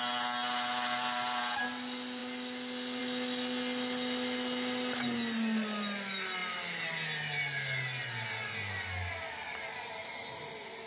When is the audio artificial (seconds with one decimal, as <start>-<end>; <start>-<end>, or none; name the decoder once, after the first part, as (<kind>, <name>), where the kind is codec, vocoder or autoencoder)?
none